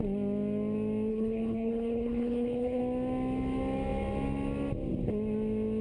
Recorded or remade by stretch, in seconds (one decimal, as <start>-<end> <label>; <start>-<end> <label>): 0.0-1.1 recorded; 1.1-2.8 remade; 2.8-5.8 recorded